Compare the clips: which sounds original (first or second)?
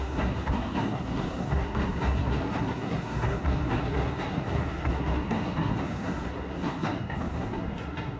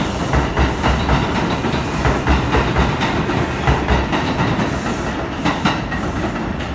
second